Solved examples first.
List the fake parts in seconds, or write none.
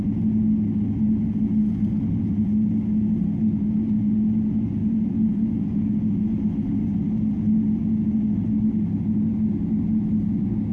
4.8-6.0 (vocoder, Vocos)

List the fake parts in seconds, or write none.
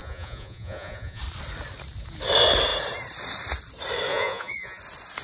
0.0-1.2 (vocoder, Vocos); 4.1-4.8